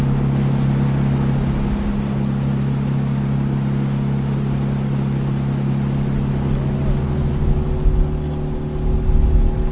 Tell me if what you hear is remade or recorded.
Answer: recorded